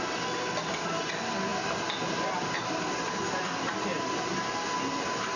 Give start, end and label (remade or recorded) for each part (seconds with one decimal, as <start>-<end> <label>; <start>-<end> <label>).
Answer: 0.0-5.4 recorded